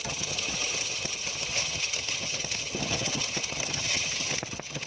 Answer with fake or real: fake